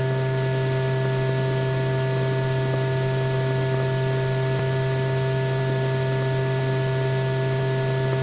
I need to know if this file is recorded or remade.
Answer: recorded